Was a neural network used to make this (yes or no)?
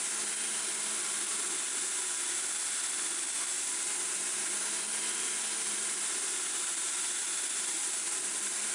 no